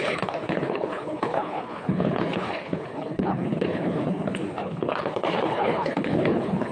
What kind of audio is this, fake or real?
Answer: fake